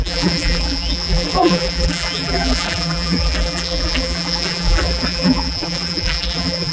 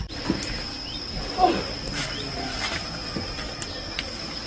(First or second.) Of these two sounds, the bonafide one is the second